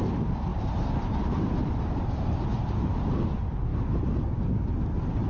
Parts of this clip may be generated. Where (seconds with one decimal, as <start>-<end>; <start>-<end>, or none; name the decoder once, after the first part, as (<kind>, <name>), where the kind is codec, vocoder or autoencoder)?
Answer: 0.5-2.4 (vocoder, BigVGAN v2)

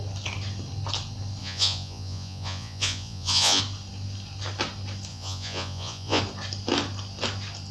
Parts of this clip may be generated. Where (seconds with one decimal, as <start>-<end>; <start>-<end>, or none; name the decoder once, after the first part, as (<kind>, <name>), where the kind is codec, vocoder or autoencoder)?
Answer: 1.4-3.6 (vocoder, Vocos); 5.1-6.2

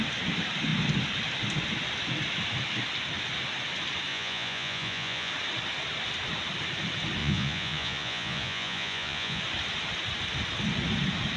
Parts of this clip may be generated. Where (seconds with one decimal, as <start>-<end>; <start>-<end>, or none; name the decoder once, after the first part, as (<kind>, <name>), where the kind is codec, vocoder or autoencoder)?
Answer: 4.1-5.3 (vocoder, Vocos); 7.2-9.4

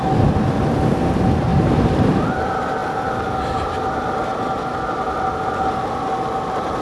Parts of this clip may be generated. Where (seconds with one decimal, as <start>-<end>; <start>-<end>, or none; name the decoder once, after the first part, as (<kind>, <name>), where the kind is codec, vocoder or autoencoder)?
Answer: 1.5-2.4 (vocoder, BigVGAN v2)